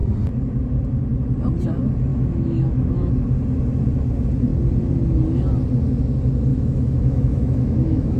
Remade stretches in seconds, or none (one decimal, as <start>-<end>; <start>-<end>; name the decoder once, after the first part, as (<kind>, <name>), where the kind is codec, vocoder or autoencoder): 2.1-3.1 (autoencoder, DAC-VAE); 6.5-8.2